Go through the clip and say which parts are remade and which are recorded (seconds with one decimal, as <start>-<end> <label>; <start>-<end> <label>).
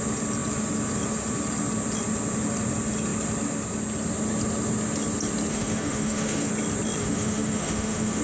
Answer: 0.0-5.5 recorded; 5.5-6.5 remade; 6.5-7.0 recorded; 7.0-8.2 remade